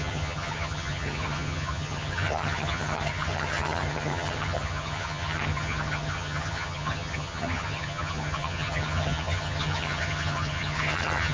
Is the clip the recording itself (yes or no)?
no